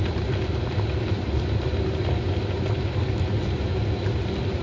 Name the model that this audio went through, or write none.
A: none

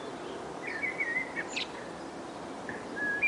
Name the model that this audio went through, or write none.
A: none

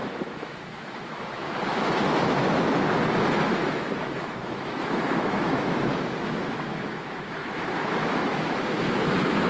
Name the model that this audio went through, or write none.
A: autoencoder, DAC-VAE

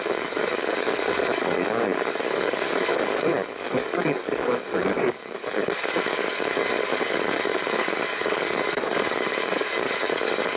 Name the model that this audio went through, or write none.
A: codec, DAC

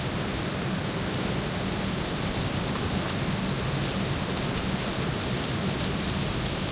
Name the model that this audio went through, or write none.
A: none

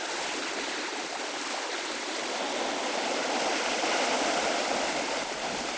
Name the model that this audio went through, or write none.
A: none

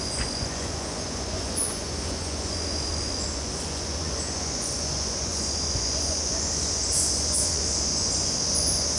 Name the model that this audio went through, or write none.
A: vocoder, Vocos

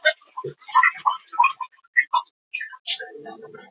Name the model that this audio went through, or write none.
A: none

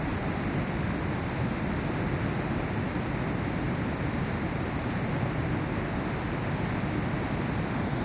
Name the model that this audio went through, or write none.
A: none